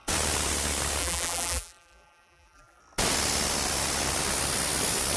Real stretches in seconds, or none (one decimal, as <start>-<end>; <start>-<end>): 0.0-1.0; 2.8-5.2